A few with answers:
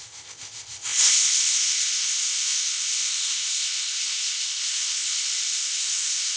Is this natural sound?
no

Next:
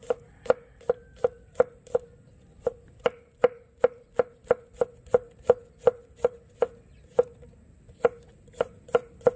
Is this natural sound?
yes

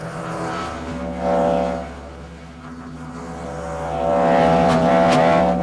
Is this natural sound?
yes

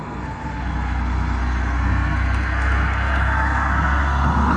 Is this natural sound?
no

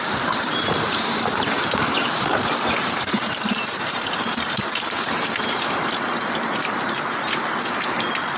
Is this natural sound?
no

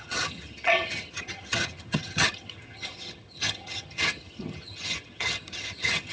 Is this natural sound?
no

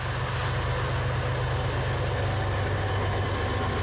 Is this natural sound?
yes